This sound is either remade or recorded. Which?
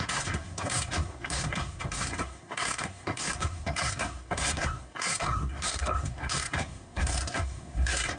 remade